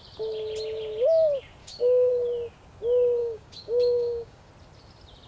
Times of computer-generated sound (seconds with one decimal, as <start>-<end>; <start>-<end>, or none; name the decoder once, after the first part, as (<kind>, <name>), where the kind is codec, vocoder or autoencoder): 1.6-2.1 (codec, DAC); 3.2-4.5